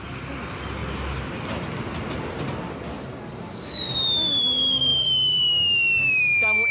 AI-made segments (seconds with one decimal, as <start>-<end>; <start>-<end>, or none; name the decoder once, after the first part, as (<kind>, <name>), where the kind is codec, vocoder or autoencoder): none